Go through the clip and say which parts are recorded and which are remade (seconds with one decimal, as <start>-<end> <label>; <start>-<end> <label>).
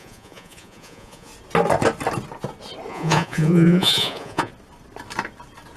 0.0-1.3 remade; 1.3-2.9 recorded; 2.9-4.5 remade; 4.5-5.8 recorded